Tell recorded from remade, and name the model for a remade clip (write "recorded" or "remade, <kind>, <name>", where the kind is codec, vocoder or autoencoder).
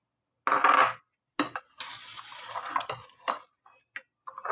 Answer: recorded